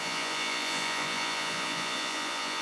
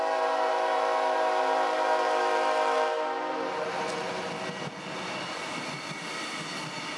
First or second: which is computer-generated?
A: first